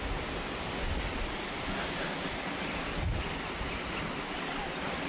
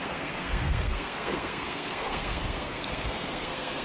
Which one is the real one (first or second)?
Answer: first